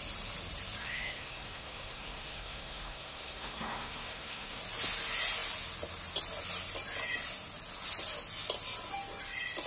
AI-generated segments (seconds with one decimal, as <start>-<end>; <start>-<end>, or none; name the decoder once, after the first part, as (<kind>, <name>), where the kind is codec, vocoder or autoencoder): 0.8-4.6 (codec, SNAC)